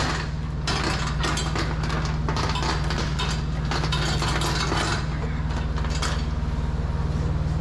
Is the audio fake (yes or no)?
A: no